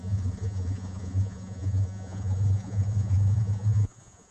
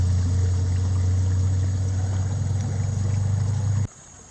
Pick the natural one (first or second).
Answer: second